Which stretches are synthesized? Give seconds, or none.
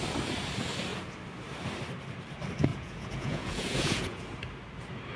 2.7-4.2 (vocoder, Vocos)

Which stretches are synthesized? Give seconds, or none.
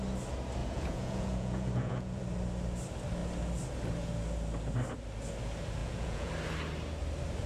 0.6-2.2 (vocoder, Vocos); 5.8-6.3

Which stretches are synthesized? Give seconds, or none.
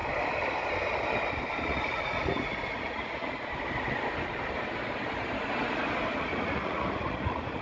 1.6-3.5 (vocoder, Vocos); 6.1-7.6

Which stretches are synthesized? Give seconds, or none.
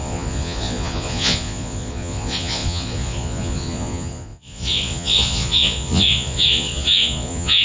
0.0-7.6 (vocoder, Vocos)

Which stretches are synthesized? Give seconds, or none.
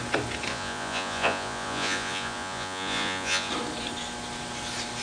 0.5-3.5 (vocoder, Vocos)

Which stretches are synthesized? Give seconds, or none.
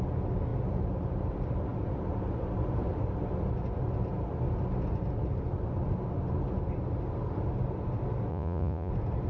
8.3-8.9 (vocoder, Vocos)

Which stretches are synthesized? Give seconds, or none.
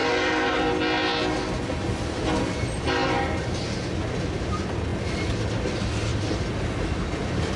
none